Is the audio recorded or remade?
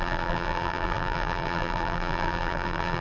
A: remade